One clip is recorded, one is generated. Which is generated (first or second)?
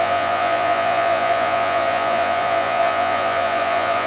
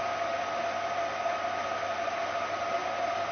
first